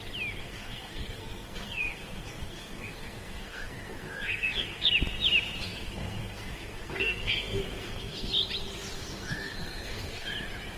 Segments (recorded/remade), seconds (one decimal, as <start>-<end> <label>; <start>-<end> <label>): 0.0-0.4 recorded; 0.4-4.9 remade; 4.9-5.6 recorded; 5.6-8.3 remade; 8.3-9.0 recorded; 9.0-10.3 remade; 10.3-10.8 recorded

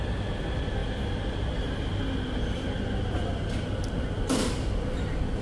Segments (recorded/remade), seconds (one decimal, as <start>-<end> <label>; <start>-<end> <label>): 0.0-5.4 recorded

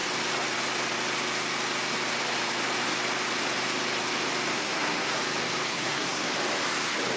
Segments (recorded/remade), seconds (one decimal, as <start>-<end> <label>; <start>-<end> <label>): 0.0-4.5 recorded; 4.5-5.2 remade; 5.2-5.7 recorded; 5.7-6.3 remade; 6.3-7.2 recorded

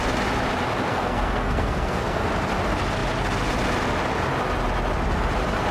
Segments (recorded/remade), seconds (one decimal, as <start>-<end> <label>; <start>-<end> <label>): 0.0-0.9 recorded; 0.9-2.3 remade; 2.3-5.7 recorded

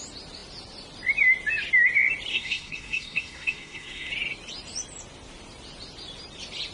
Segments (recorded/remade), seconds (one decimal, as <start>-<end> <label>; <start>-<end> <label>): 0.0-2.3 recorded; 2.3-4.1 remade; 4.1-6.7 recorded

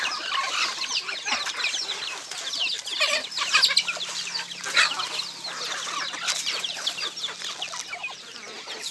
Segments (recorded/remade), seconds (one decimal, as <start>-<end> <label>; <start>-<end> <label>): 0.0-8.9 recorded